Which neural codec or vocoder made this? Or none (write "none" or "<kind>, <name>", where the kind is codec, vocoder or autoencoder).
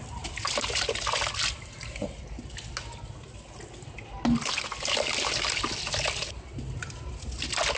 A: none